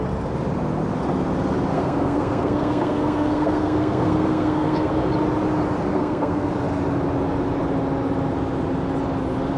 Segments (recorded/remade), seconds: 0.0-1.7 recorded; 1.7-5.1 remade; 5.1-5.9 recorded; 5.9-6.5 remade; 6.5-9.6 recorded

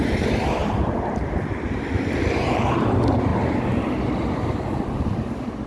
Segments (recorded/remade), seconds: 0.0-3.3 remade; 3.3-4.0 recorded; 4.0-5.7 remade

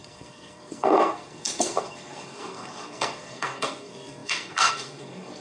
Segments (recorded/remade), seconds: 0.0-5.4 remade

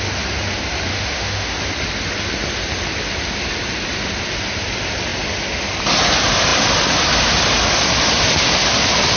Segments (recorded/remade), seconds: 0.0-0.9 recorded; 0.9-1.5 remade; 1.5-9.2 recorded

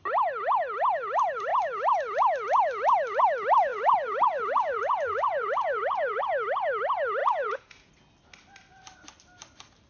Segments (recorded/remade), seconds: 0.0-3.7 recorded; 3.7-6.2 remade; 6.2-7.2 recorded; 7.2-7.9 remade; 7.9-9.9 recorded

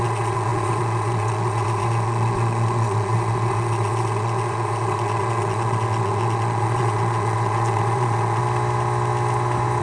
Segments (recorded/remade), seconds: 0.0-8.4 remade; 8.4-9.8 recorded